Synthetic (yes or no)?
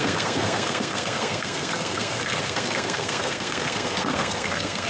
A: yes